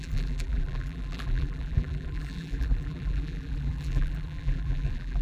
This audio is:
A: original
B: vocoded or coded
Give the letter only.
B